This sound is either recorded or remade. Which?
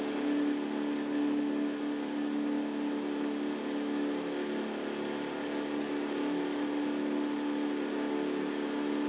recorded